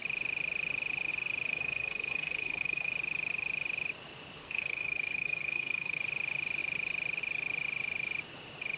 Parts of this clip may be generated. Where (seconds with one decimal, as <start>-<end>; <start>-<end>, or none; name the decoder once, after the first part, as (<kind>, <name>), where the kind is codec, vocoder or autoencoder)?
1.5-2.9 (codec, SNAC); 4.4-6.0